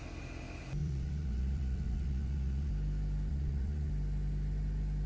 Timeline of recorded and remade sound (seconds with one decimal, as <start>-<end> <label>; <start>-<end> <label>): 0.0-0.8 recorded; 0.8-2.7 remade; 2.7-3.3 recorded; 3.3-3.9 remade; 3.9-5.1 recorded